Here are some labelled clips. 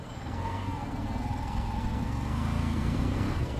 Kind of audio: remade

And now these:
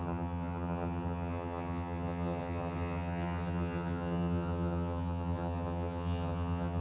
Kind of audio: remade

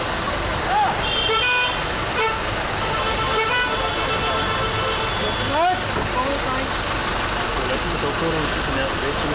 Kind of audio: recorded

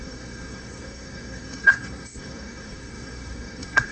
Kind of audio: remade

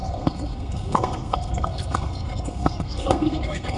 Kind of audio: remade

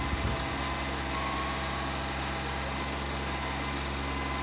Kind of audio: recorded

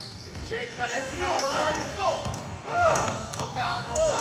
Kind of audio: remade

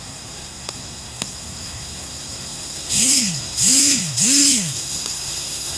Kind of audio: remade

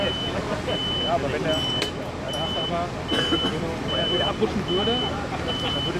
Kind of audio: recorded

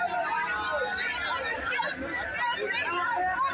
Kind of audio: recorded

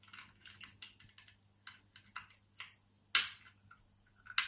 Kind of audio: recorded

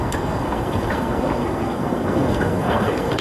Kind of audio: remade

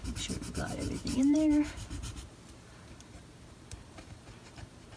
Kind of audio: remade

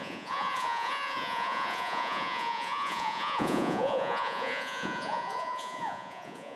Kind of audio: remade